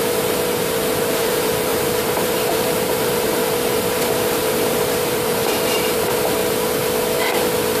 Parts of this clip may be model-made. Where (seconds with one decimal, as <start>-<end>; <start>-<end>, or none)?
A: 0.0-6.4